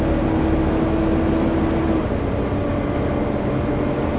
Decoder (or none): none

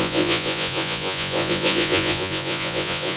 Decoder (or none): vocoder, Vocos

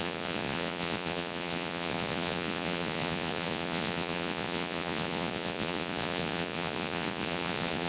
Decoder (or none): vocoder, Vocos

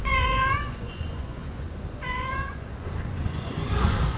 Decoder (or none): vocoder, Vocos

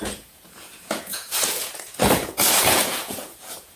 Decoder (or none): vocoder, Vocos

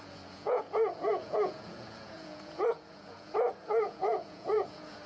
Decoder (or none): vocoder, Vocos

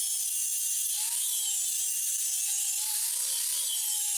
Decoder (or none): none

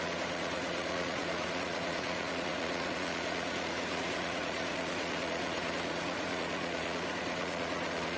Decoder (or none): vocoder, Vocos